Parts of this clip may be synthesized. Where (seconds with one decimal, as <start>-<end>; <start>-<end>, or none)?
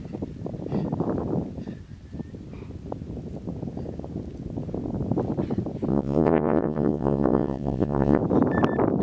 5.9-8.2